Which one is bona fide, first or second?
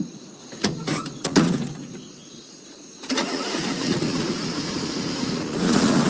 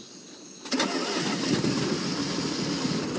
second